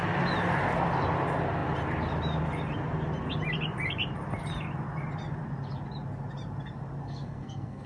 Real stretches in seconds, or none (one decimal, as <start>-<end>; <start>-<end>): 0.0-7.0